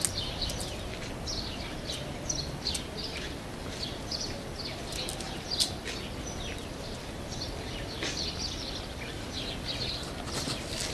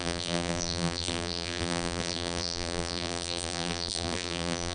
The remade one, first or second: second